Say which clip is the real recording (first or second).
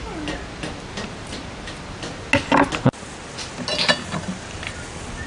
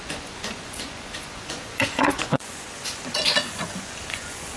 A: first